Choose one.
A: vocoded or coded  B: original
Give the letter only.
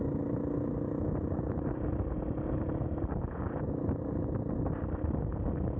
B